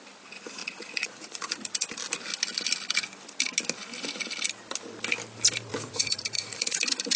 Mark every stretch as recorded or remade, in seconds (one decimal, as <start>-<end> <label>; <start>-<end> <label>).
0.0-0.6 recorded; 0.6-1.7 remade; 1.7-5.7 recorded; 5.7-6.8 remade; 6.8-7.2 recorded